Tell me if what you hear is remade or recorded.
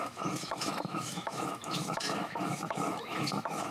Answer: remade